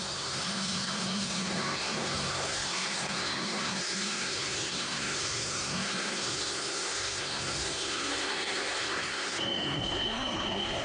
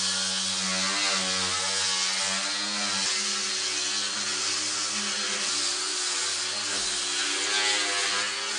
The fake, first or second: first